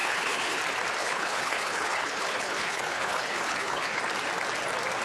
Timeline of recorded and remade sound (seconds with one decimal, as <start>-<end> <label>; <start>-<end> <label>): 0.0-0.6 remade; 0.6-1.0 recorded; 1.0-4.0 remade; 4.0-5.0 recorded